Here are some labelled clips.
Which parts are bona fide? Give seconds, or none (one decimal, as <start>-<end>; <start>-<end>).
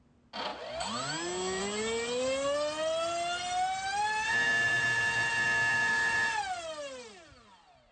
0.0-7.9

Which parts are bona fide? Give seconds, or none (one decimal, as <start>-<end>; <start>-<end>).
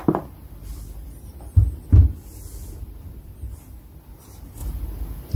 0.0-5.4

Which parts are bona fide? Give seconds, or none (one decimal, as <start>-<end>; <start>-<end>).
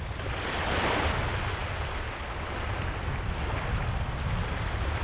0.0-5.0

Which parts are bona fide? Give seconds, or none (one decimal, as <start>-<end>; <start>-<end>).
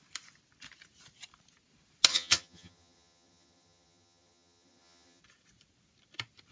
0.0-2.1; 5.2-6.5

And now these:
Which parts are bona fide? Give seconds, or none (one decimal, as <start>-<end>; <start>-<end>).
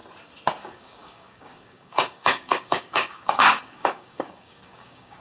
0.0-0.6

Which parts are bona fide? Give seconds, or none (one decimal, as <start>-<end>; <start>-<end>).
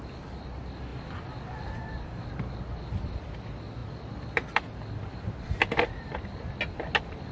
0.0-7.3